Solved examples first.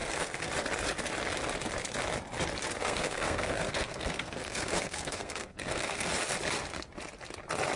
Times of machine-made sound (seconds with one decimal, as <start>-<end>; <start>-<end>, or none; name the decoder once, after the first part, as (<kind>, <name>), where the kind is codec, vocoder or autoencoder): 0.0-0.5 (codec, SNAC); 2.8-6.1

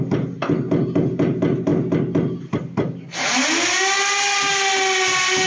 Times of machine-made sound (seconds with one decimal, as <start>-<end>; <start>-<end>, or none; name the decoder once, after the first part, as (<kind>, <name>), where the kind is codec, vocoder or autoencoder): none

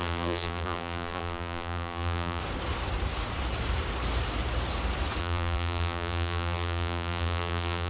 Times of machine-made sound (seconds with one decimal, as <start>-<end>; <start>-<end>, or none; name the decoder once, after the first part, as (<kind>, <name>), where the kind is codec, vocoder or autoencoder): 0.0-2.4 (vocoder, BigVGAN v2); 5.2-7.9